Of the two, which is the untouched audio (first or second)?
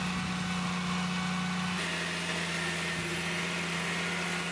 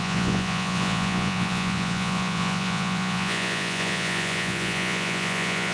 first